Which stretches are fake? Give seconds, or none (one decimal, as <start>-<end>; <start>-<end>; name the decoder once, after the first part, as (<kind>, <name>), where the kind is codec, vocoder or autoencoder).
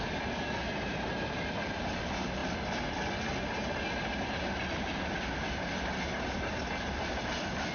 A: none